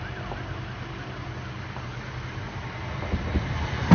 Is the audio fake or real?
real